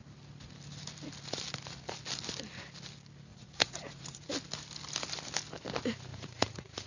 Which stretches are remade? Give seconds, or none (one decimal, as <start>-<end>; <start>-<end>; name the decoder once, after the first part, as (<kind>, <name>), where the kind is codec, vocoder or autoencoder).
3.3-4.3 (vocoder, Vocos); 6.1-6.9